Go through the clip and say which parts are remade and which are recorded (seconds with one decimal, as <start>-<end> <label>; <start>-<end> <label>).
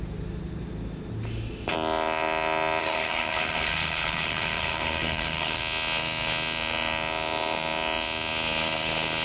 0.0-2.8 recorded; 2.8-5.6 remade; 5.6-9.2 recorded